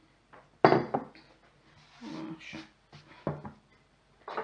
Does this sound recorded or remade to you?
recorded